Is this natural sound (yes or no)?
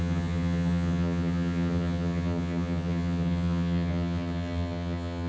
no